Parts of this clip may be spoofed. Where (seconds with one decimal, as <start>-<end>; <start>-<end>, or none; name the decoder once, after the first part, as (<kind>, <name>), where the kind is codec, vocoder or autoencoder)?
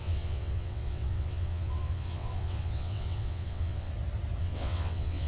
0.0-3.9 (vocoder, WaveNeXt); 4.4-5.3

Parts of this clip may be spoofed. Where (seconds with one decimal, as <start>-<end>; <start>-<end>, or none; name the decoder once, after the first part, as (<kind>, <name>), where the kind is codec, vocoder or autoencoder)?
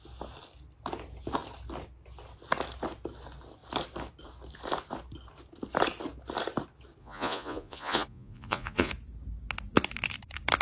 7.0-8.9 (vocoder, Vocos)